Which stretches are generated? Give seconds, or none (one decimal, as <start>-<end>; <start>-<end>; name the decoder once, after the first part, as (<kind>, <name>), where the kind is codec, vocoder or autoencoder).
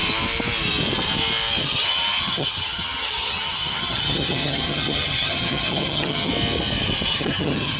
1.6-6.3 (vocoder, HiFi-GAN); 7.1-7.8